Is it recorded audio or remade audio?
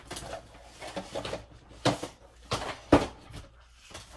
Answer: recorded